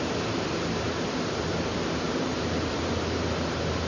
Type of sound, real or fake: real